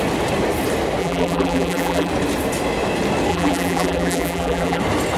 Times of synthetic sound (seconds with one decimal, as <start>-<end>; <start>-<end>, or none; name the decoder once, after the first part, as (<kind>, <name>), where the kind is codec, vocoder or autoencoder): 1.0-2.1 (vocoder, BigVGAN v2); 3.3-4.8